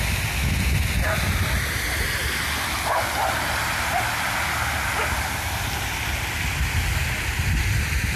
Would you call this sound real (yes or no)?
yes